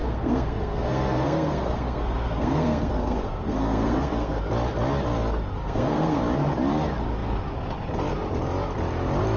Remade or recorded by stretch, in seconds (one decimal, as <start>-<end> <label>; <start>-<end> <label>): 0.0-4.4 remade; 4.4-5.6 recorded; 5.6-6.2 remade; 6.2-9.4 recorded